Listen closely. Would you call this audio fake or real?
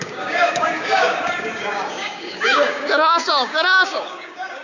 fake